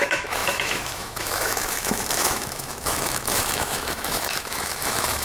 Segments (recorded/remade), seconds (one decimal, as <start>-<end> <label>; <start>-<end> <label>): 0.0-5.2 remade